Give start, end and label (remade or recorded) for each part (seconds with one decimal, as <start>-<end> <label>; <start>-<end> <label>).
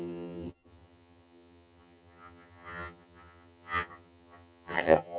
0.0-5.2 remade